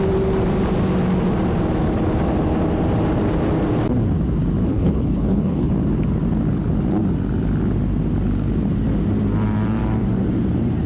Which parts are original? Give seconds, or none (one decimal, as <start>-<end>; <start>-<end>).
0.0-4.6; 5.7-10.9